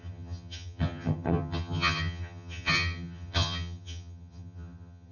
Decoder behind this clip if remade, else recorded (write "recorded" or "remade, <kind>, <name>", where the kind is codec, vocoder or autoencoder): remade, vocoder, HiFi-GAN